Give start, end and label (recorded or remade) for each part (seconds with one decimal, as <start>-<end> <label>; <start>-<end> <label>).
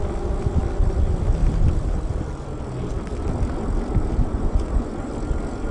0.0-4.2 recorded; 4.2-5.1 remade; 5.1-5.7 recorded